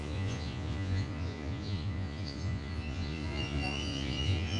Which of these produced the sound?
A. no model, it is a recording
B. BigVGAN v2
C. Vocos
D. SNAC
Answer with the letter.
C